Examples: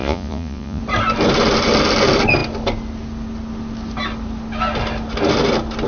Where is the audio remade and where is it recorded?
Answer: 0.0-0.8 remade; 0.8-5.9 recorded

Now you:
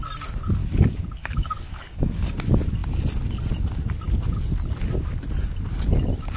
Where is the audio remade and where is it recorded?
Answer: 0.0-0.6 recorded; 0.6-2.3 remade; 2.3-6.4 recorded

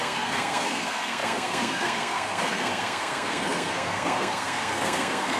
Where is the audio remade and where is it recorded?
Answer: 0.0-5.4 remade

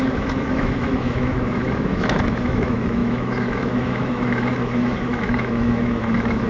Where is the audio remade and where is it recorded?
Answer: 0.0-6.5 remade

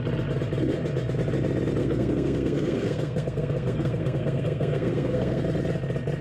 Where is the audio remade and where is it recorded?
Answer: 0.0-1.8 recorded; 1.8-5.4 remade; 5.4-6.2 recorded